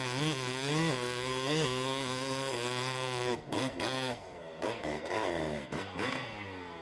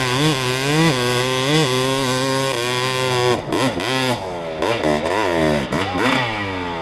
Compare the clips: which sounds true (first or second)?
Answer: second